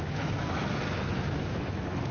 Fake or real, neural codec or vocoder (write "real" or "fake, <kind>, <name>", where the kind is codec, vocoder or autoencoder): fake, autoencoder, DAC-VAE